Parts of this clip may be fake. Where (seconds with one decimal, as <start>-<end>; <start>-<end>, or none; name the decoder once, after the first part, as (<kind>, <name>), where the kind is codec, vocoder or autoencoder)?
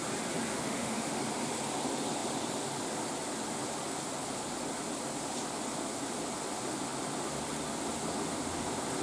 0.5-1.2 (autoencoder, DAC-VAE)